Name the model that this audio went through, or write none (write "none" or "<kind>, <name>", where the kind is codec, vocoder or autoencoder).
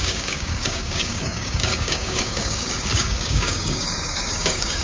codec, DAC